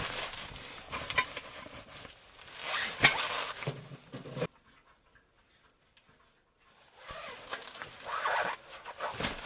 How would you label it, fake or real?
real